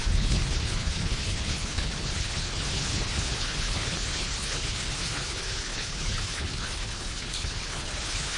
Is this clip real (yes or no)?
no